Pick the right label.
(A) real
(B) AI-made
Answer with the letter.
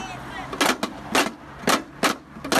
A